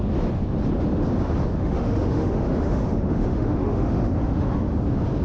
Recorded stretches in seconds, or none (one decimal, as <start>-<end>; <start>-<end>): 0.0-1.6; 4.7-5.2

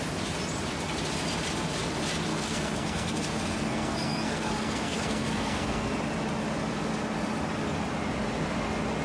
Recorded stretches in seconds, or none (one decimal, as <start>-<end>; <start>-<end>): 0.0-2.3; 5.9-9.0

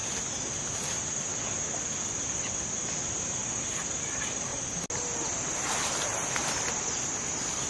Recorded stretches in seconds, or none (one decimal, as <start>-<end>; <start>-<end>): 0.0-7.7

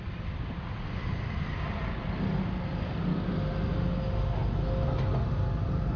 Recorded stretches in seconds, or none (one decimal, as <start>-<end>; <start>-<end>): 0.0-6.0